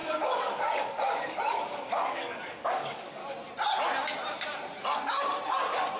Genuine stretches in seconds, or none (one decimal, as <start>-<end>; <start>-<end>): 3.2-6.0